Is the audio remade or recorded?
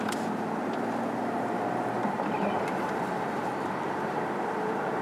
remade